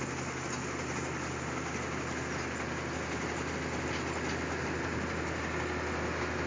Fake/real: real